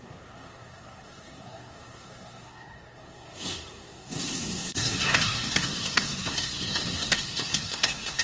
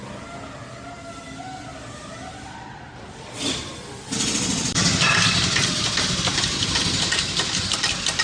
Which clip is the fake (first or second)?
first